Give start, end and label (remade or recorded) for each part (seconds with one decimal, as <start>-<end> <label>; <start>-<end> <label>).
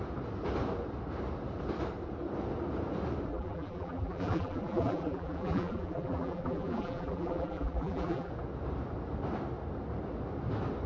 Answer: 0.0-3.3 recorded; 3.3-8.3 remade; 8.3-10.9 recorded